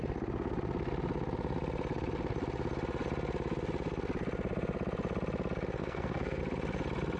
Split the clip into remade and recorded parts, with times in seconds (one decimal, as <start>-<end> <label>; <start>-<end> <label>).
0.0-5.8 recorded; 5.8-6.4 remade; 6.4-7.2 recorded